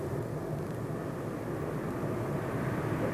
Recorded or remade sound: recorded